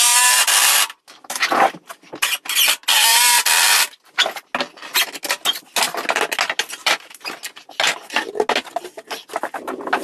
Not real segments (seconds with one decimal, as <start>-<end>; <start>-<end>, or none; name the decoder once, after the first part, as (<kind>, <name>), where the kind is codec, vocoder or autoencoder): none